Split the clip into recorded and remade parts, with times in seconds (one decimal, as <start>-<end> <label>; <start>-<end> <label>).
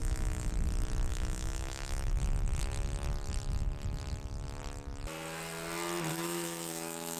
0.0-0.5 remade; 0.5-1.1 recorded; 1.1-2.1 remade; 2.1-6.1 recorded; 6.1-7.2 remade